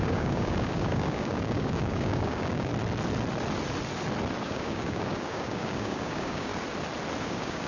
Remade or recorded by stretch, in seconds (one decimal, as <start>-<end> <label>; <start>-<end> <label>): 0.0-2.7 remade; 2.7-4.4 recorded; 4.4-6.5 remade; 6.5-7.2 recorded; 7.2-7.7 remade